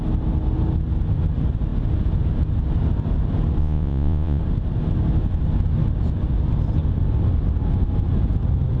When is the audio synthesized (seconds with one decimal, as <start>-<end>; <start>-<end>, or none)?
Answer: 3.6-4.4